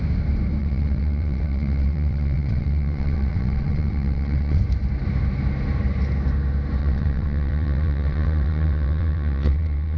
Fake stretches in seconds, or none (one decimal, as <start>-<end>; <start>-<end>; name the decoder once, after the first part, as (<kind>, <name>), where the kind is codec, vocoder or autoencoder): 0.6-4.6 (vocoder, WaveNeXt); 6.8-10.0